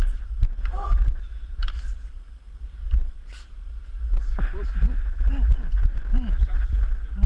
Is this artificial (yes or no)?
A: no